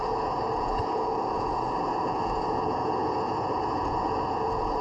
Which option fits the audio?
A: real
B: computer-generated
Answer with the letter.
B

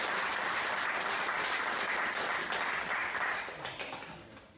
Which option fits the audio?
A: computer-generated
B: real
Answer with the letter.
B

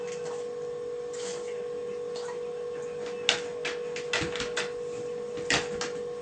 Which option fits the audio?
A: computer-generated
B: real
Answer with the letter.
B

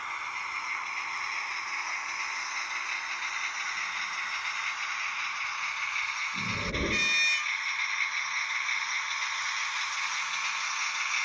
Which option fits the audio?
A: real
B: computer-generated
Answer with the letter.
A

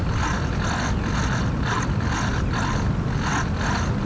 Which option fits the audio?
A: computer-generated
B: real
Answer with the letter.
B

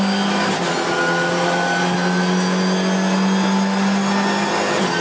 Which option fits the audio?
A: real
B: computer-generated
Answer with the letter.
A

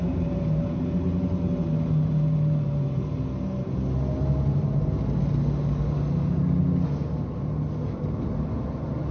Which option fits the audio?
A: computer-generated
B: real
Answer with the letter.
B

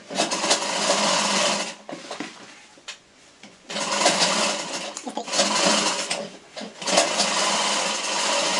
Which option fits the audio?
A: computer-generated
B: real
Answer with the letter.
A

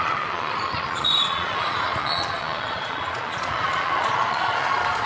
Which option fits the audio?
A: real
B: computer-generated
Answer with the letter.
B